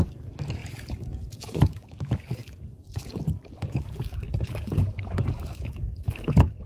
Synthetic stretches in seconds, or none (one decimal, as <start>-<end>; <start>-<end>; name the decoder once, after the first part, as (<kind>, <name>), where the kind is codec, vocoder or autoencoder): 0.0-6.7 (codec, DAC)